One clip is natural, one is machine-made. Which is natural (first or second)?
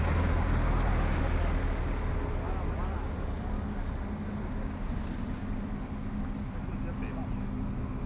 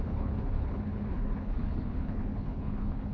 first